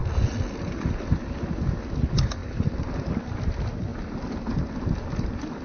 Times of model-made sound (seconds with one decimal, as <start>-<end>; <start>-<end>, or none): 0.0-1.4; 2.4-3.1; 3.9-4.5